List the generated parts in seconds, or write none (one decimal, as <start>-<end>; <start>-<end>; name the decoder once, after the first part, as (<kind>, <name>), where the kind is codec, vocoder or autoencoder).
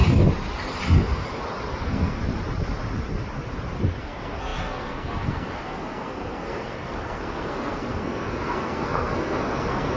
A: 1.8-2.2 (codec, SNAC); 4.0-10.0